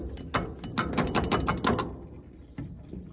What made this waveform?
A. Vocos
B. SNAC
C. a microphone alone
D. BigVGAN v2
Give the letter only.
C